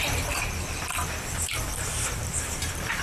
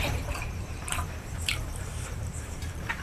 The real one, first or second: first